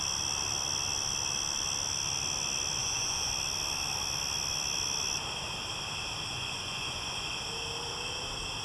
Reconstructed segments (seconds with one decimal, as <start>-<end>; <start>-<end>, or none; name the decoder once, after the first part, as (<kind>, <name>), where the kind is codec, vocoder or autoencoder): 2.8-3.3 (vocoder, Vocos); 6.3-7.4